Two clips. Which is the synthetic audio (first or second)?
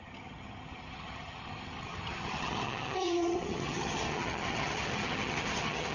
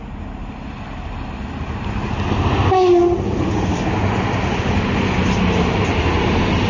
first